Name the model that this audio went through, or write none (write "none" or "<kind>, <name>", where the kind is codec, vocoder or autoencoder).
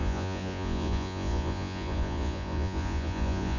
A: vocoder, Vocos